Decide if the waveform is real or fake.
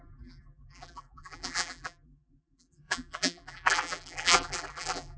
fake